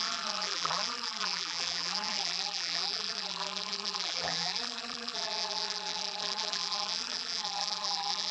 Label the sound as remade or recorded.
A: remade